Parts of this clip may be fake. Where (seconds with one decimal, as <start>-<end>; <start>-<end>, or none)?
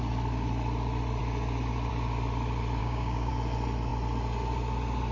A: 2.8-3.3